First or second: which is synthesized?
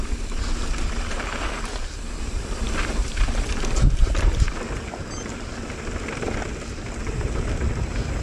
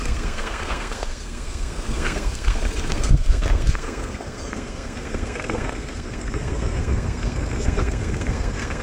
second